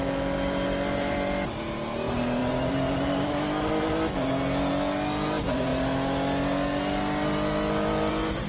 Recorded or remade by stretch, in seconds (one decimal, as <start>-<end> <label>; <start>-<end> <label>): 0.0-8.5 recorded